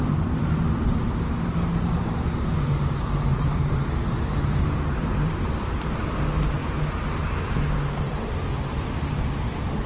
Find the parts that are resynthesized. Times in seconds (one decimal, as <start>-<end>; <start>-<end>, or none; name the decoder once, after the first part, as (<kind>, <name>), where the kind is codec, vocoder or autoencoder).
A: 0.0-6.6 (vocoder, BigVGAN v2); 8.0-9.9

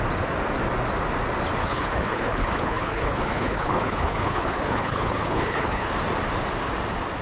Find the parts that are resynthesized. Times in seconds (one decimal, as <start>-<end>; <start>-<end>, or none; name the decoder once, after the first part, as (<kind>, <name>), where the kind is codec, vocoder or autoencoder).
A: 1.6-5.9 (codec, HILCodec)

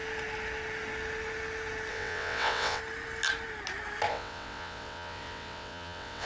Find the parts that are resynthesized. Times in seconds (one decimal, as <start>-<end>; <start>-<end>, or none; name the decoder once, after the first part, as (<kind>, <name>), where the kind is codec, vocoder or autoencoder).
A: 1.9-2.8 (vocoder, WaveNeXt); 4.1-6.3

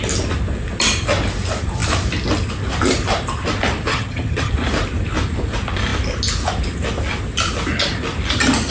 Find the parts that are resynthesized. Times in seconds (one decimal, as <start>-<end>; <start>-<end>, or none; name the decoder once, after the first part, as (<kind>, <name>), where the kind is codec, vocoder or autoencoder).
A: 3.9-4.5 (vocoder, HiFi-GAN)

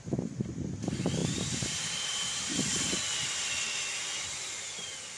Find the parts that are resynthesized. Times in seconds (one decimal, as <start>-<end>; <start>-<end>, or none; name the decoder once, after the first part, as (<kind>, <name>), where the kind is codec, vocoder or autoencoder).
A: 1.2-3.5 (vocoder, BigVGAN v2)

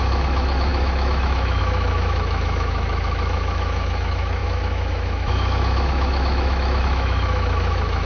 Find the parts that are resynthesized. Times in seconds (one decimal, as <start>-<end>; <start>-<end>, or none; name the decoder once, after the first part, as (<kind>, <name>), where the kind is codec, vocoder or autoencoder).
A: 0.0-8.1 (autoencoder, DAC-VAE)

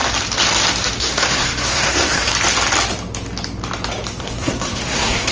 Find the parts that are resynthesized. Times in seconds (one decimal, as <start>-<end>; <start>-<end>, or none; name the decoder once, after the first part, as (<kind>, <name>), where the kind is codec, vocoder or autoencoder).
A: 1.0-2.3 (codec, SNAC); 4.2-5.3